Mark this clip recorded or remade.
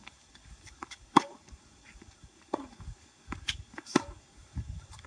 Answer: remade